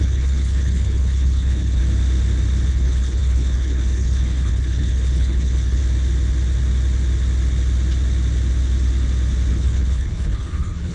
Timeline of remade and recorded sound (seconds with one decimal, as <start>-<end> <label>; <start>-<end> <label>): 0.0-1.8 remade; 1.8-2.7 recorded; 2.7-5.8 remade; 5.8-9.5 recorded; 9.5-10.9 remade